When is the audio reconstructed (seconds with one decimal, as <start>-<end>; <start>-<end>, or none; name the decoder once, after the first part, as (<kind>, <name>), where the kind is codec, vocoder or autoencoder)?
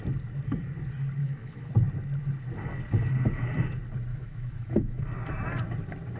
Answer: 1.2-1.7 (autoencoder, DAC-VAE); 4.1-5.0